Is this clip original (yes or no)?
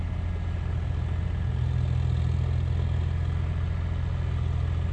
yes